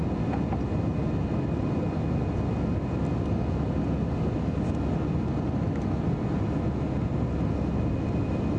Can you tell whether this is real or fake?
real